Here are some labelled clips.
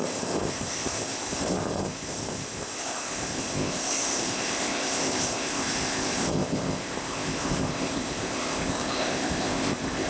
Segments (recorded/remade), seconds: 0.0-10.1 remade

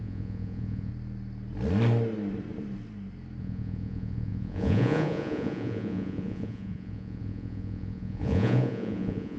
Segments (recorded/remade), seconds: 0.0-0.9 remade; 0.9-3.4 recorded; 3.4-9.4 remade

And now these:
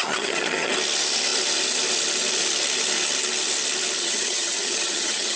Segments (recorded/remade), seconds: 0.0-0.7 remade; 0.7-4.0 recorded; 4.0-5.4 remade

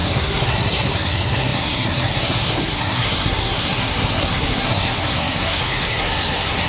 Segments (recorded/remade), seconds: 0.0-6.7 remade

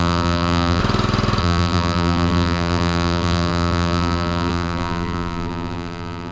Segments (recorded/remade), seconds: 0.0-0.8 remade; 0.8-1.4 recorded; 1.4-6.3 remade